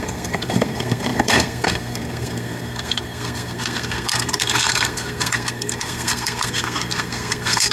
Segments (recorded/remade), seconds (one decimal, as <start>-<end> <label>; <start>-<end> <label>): 0.0-7.7 remade

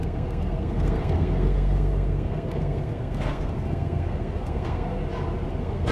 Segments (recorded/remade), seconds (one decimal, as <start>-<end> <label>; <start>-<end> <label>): 0.0-5.0 remade; 5.0-5.5 recorded; 5.5-5.9 remade

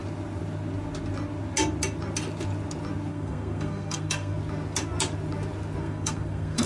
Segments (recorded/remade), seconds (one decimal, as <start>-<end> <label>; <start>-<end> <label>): 0.0-3.1 recorded; 3.1-4.4 remade; 4.4-5.8 recorded; 5.8-6.7 remade

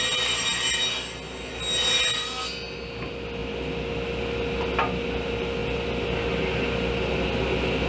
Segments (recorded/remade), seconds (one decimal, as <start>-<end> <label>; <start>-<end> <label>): 0.0-7.9 recorded

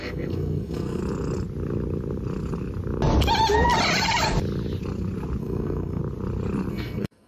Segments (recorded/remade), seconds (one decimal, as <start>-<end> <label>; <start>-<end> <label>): 0.0-1.0 remade; 1.0-5.4 recorded; 5.4-6.0 remade; 6.0-6.7 recorded; 6.7-7.3 remade